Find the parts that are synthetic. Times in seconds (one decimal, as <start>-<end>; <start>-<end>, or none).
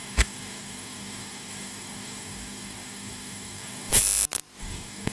0.0-4.0; 4.6-5.1